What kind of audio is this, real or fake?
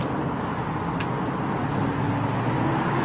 real